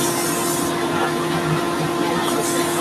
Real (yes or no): yes